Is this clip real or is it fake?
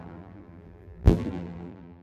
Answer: fake